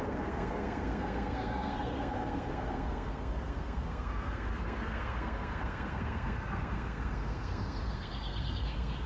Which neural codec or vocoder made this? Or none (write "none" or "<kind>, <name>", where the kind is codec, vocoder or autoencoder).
codec, SNAC